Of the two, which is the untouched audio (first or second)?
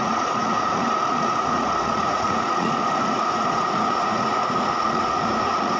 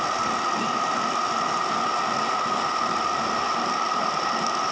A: second